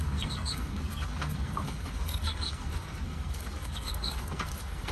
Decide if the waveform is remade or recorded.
remade